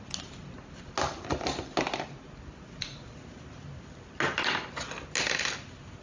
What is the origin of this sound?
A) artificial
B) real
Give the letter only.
B